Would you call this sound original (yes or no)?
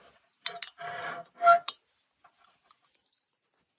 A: yes